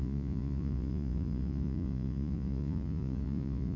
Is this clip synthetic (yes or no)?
yes